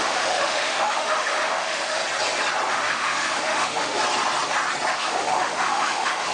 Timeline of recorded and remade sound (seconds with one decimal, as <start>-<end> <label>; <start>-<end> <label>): 0.0-2.0 remade; 2.0-2.7 recorded; 2.7-4.0 remade; 4.0-4.9 recorded; 4.9-6.3 remade

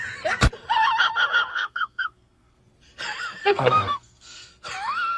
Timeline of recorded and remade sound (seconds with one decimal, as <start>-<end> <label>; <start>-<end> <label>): 0.0-1.5 recorded; 1.5-2.6 remade; 2.6-3.4 recorded; 3.4-4.5 remade; 4.5-5.2 recorded

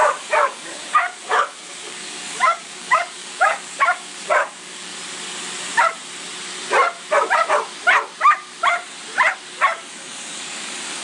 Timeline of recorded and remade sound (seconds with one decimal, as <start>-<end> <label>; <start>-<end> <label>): 0.0-4.9 remade; 4.9-9.9 recorded; 9.9-11.0 remade